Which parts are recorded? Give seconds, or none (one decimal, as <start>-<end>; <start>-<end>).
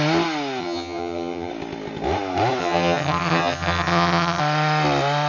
0.0-0.6; 1.5-2.6; 4.4-5.3